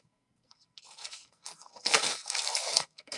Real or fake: fake